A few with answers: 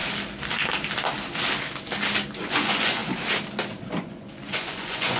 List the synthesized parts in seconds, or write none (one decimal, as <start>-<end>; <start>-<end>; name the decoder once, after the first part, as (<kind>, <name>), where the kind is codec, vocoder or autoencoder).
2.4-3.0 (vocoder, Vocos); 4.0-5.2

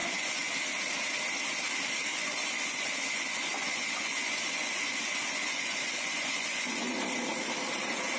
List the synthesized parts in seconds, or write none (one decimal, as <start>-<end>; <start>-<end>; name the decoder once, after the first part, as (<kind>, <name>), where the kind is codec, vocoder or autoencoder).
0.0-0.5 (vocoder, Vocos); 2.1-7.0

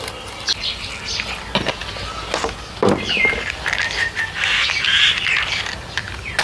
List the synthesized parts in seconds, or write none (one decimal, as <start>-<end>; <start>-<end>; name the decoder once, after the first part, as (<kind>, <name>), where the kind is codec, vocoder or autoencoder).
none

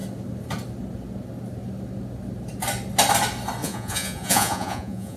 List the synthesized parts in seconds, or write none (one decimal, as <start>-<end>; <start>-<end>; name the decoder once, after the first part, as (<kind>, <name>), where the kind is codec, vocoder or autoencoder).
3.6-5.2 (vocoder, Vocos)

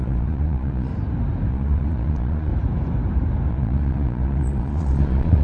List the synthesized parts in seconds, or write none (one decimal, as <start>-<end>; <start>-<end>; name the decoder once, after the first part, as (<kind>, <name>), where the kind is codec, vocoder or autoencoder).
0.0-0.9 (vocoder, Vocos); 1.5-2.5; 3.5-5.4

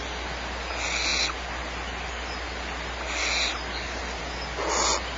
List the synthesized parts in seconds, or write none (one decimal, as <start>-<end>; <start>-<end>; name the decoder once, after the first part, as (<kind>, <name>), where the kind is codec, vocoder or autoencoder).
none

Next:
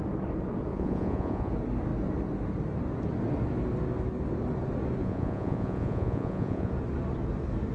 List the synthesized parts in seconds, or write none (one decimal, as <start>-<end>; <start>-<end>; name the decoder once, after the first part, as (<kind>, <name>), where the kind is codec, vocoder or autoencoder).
0.7-1.5 (vocoder, Vocos); 5.0-6.7